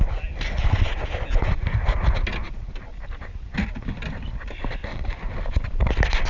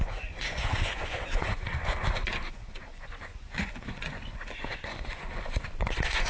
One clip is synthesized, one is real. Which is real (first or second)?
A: first